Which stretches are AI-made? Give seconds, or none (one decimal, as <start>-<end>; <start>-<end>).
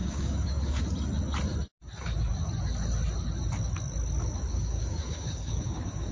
0.0-0.8; 4.5-6.1